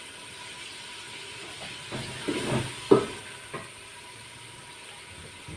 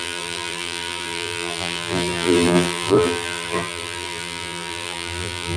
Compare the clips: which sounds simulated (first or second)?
second